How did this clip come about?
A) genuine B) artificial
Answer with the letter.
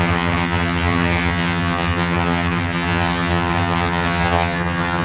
B